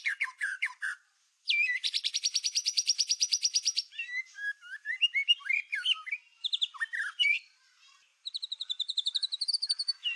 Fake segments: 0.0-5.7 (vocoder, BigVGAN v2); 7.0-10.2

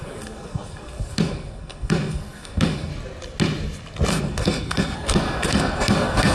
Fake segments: 0.0-2.9 (codec, SNAC); 4.1-6.3

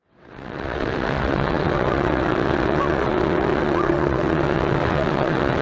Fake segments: 0.0-5.6 (vocoder, WaveNeXt)

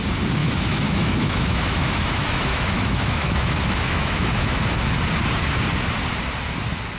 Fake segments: 0.4-4.6 (autoencoder, DAC-VAE)